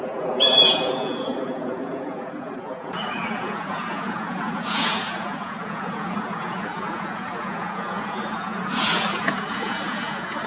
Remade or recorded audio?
remade